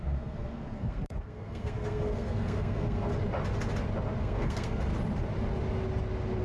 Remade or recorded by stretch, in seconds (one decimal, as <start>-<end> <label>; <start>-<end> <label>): 0.0-3.1 remade; 3.1-4.2 recorded; 4.2-4.9 remade; 4.9-6.4 recorded